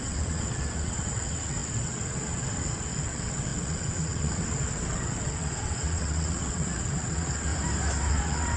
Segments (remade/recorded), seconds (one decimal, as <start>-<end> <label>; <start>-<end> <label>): 0.0-7.5 remade; 7.5-8.1 recorded; 8.1-8.6 remade